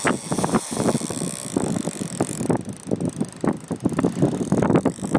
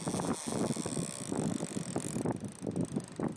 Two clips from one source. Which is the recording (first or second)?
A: second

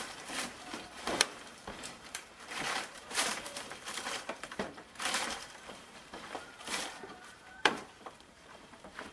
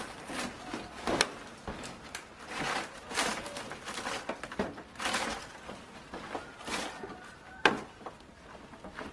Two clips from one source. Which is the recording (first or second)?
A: second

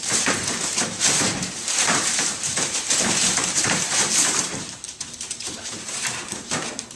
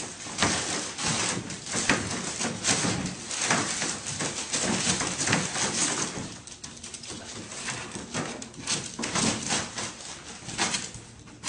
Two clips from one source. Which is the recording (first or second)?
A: second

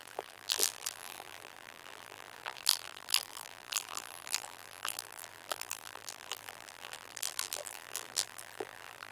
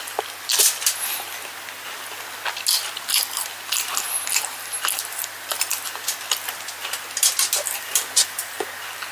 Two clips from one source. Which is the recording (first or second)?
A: second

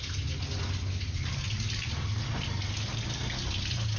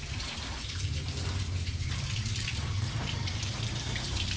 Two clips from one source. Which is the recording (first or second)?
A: first